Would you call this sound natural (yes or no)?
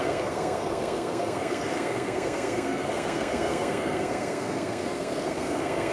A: no